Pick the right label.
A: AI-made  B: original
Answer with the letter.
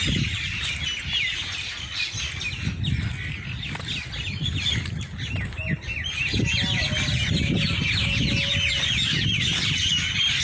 B